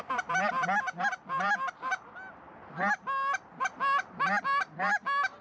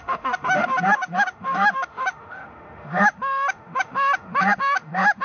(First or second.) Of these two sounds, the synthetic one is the second